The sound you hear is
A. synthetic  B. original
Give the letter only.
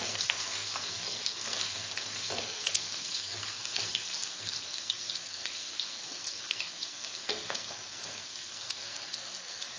A